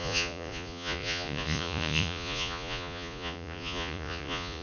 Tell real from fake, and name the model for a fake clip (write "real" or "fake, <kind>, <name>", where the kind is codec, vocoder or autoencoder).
fake, vocoder, Vocos